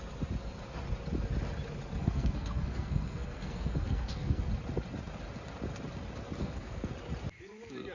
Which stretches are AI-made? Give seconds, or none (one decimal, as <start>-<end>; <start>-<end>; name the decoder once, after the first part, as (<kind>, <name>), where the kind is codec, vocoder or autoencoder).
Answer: 2.0-4.4 (codec, SNAC); 6.4-6.9